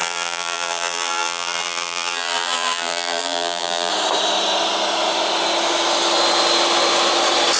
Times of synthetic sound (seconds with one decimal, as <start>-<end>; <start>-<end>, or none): 0.0-3.9